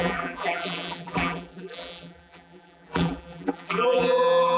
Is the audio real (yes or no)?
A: no